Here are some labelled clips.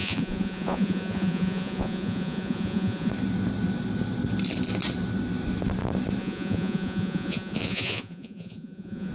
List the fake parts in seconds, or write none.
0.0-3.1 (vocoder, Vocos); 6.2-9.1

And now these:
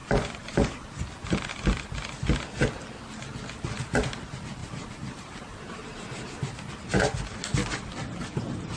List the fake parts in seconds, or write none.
0.0-1.1 (vocoder, BigVGAN v2); 4.6-6.7

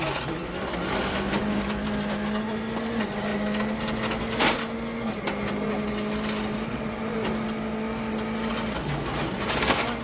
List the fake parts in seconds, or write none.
none

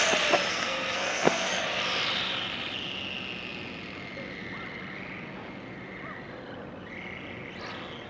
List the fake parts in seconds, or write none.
0.5-1.5 (codec, SNAC)

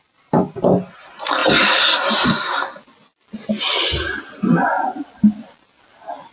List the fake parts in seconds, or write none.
1.4-5.2 (vocoder, BigVGAN v2)

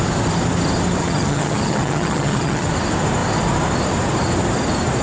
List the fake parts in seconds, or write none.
1.0-2.7 (vocoder, HiFi-GAN)

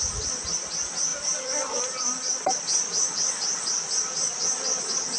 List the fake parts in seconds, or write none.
none

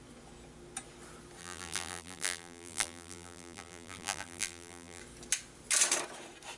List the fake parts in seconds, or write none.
1.4-5.0 (vocoder, BigVGAN v2)